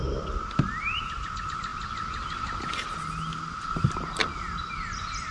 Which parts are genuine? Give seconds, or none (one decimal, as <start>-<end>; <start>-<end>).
0.0-5.3

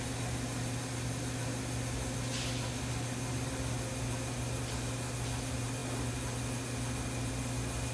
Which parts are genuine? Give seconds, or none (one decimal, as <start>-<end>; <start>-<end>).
0.0-7.9

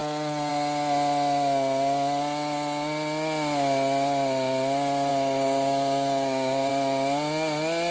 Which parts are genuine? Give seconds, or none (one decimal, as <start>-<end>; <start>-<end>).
0.5-5.1; 6.7-7.9

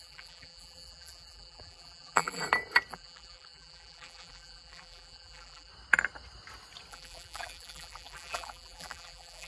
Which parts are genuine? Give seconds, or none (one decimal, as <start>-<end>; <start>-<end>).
2.4-2.9; 5.7-6.9